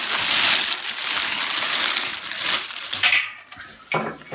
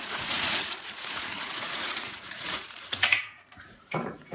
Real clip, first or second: first